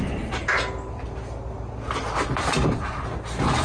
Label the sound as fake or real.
real